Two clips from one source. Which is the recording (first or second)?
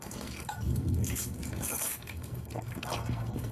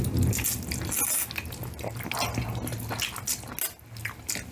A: second